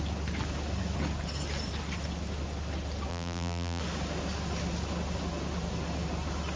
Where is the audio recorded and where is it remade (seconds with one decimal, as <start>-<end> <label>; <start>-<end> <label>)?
0.0-3.1 recorded; 3.1-3.8 remade; 3.8-6.6 recorded